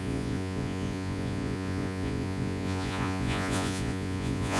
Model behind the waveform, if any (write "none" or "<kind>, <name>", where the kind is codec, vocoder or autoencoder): vocoder, Vocos